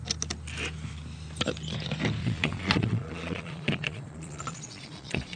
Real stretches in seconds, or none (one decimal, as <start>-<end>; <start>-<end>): 0.0-2.2